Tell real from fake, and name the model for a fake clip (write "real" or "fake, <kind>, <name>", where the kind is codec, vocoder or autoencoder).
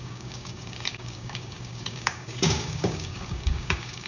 fake, codec, DAC